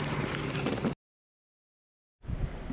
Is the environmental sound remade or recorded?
recorded